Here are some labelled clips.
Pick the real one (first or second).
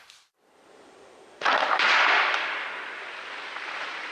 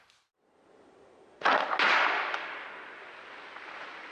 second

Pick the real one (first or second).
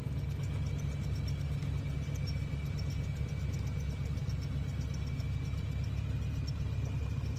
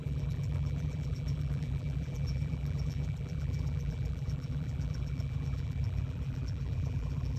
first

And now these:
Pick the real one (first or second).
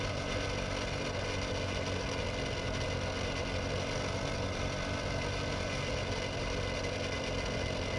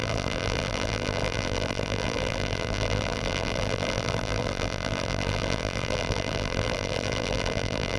first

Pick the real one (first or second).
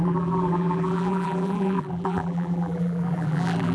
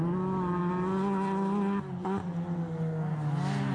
second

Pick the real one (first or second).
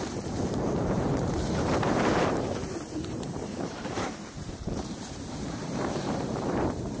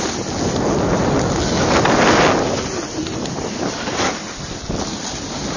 second